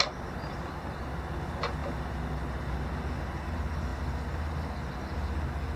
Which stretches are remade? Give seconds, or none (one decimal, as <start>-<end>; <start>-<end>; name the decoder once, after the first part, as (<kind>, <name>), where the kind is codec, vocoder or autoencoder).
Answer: none